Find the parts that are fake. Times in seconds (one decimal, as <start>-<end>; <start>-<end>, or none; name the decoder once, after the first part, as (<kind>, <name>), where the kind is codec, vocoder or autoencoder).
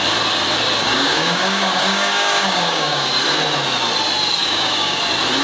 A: 0.8-3.1 (codec, DAC); 4.4-5.0